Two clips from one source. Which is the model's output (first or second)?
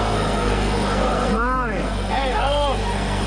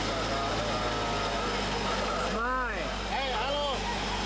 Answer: first